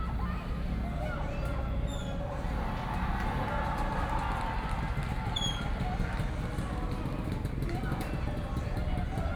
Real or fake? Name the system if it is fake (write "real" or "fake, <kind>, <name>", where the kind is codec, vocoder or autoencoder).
real